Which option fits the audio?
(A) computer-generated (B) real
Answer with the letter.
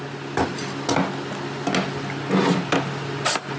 B